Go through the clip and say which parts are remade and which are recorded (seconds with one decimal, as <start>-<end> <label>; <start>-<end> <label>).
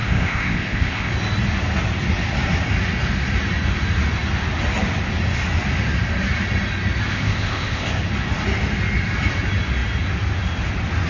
0.0-1.1 remade; 1.1-7.1 recorded; 7.1-8.0 remade; 8.0-11.1 recorded